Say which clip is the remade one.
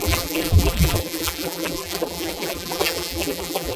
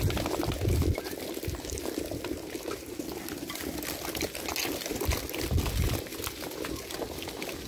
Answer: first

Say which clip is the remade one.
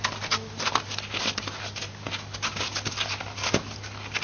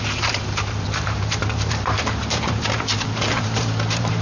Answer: second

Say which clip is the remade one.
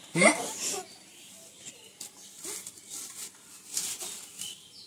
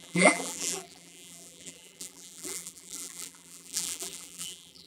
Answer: second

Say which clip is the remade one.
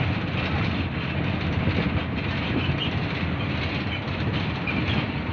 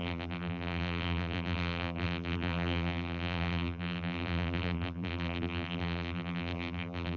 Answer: second